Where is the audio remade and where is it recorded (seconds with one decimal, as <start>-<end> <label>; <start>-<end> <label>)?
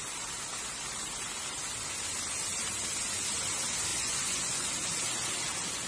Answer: 0.0-3.9 recorded; 3.9-4.7 remade; 4.7-5.9 recorded